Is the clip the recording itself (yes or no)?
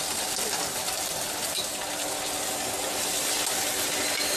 yes